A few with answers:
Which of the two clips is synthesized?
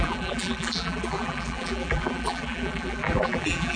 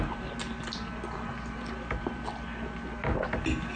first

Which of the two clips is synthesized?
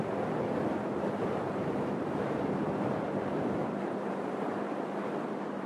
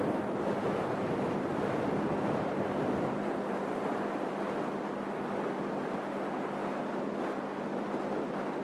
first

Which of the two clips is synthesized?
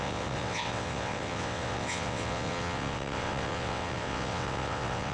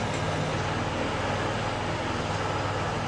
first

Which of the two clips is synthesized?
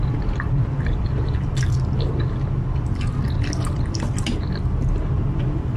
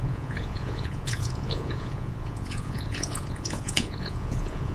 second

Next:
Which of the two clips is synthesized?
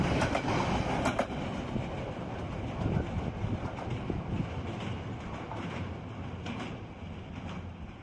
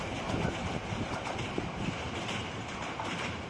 second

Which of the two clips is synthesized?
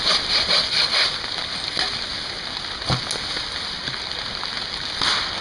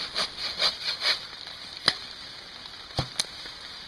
second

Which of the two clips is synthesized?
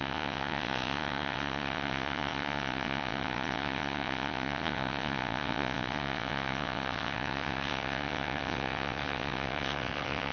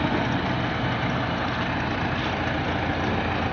first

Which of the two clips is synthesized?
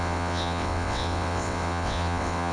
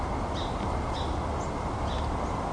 first